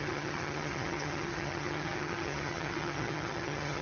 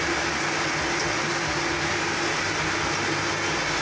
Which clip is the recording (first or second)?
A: second